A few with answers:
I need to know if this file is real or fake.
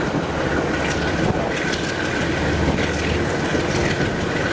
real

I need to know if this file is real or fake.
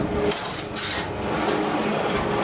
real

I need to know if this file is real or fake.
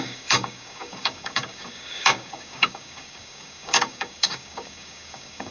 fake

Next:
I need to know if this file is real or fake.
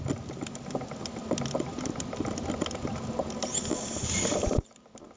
real